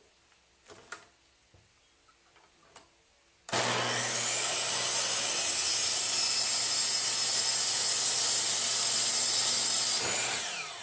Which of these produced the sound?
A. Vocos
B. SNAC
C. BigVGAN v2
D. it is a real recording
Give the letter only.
D